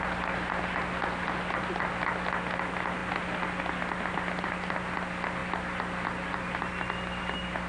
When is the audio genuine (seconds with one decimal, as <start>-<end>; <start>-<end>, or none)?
0.0-7.7